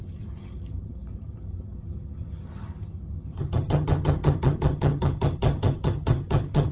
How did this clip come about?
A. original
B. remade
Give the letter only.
B